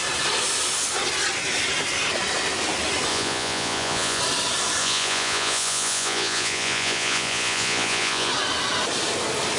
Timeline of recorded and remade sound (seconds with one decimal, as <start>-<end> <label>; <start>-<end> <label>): 0.0-3.1 recorded; 3.1-4.2 remade; 4.2-4.8 recorded; 4.8-8.3 remade; 8.3-9.6 recorded